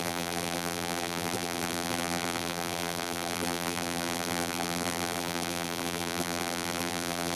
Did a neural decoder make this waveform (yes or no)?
yes